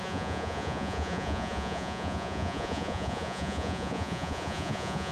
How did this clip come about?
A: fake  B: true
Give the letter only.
A